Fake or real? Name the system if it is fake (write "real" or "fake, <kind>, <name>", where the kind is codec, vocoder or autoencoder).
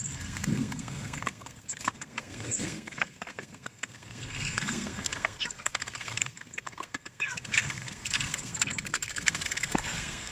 fake, codec, SNAC